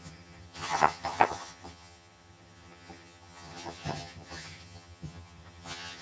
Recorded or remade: remade